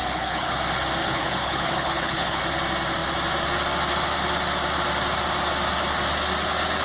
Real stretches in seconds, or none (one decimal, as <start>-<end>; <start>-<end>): 0.6-1.0; 2.4-6.8

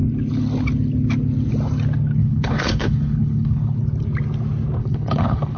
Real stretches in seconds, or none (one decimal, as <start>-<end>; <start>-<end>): 0.0-2.2; 3.8-4.8

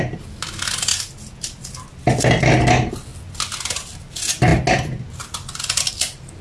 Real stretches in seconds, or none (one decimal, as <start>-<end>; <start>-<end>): 0.0-6.4

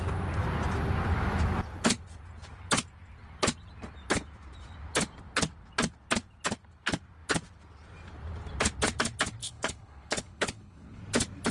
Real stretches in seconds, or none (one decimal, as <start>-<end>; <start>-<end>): 0.0-9.4; 11.0-11.5

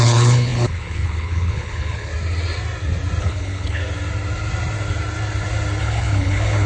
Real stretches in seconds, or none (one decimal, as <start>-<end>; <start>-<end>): 2.1-3.2; 3.8-5.8